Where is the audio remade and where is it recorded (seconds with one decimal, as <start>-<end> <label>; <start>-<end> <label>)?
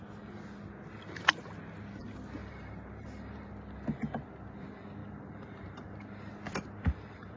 0.0-2.4 recorded; 2.4-3.5 remade; 3.5-5.0 recorded; 5.0-6.3 remade; 6.3-7.4 recorded